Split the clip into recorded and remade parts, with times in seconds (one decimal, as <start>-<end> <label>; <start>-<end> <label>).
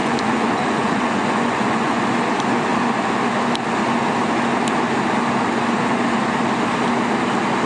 0.0-2.0 remade; 2.0-7.7 recorded